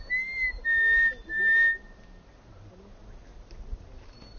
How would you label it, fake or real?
real